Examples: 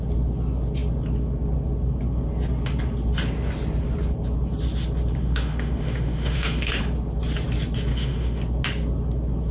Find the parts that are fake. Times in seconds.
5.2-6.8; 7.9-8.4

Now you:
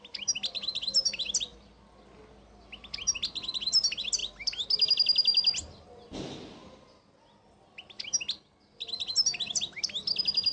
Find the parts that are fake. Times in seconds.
none

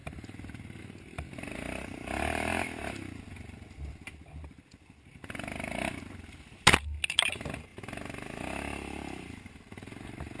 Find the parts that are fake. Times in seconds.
none

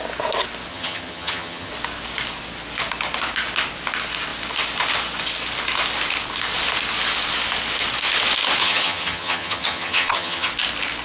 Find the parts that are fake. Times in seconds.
0.7-1.7; 8.6-10.5

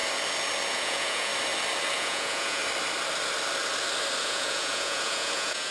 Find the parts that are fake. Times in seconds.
0.7-1.3; 1.9-2.6; 4.2-5.7